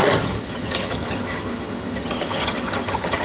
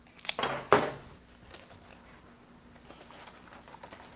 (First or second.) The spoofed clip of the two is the first